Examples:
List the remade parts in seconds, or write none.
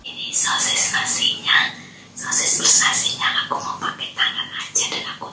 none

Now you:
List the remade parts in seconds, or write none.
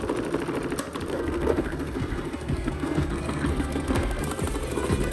1.1-4.2 (codec, SNAC)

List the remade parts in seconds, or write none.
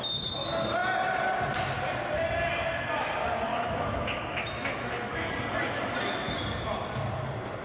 3.5-5.3 (autoencoder, DAC-VAE)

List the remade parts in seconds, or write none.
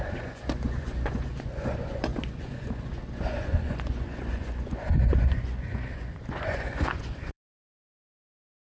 0.0-8.6 (vocoder, Vocos)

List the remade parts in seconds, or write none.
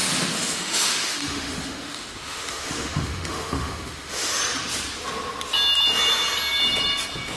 0.0-4.4 (autoencoder, DAC-VAE)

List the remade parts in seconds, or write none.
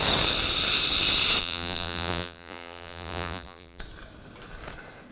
1.4-3.8 (vocoder, BigVGAN v2)